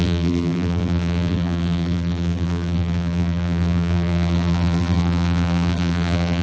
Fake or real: fake